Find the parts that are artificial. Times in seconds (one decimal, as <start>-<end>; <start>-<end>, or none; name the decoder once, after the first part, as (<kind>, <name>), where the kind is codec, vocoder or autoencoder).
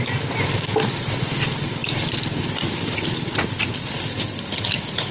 none